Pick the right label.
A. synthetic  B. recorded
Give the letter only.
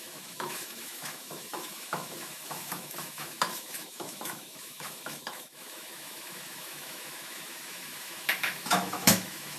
A